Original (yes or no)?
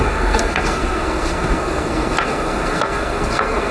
no